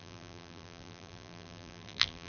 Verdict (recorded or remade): remade